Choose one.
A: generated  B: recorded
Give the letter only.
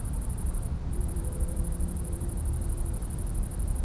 A